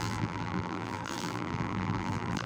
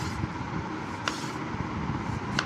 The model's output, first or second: first